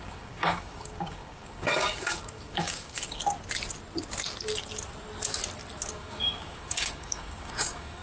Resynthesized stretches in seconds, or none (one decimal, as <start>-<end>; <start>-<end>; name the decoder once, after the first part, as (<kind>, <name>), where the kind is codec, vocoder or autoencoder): 0.0-3.2 (codec, DAC); 5.9-8.0